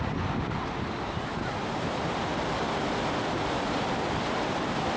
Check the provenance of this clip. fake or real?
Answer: real